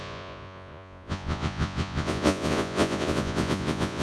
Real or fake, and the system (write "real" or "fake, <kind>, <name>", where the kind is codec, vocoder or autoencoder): fake, vocoder, Vocos